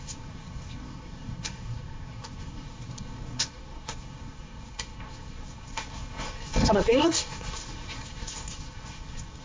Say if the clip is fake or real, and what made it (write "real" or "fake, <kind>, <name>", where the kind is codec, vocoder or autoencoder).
fake, codec, SNAC